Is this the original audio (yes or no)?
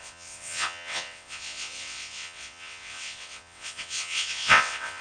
no